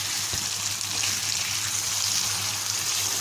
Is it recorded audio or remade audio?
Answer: recorded